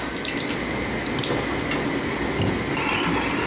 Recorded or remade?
recorded